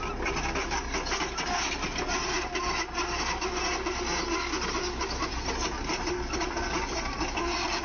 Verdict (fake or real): real